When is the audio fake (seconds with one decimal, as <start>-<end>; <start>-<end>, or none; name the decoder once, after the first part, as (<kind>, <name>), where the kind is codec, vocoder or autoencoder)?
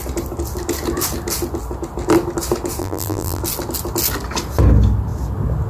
2.8-3.4 (vocoder, BigVGAN v2)